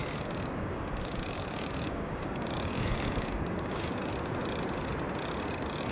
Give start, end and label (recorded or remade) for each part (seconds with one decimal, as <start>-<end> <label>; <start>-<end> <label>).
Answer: 0.0-4.1 remade; 4.1-5.9 recorded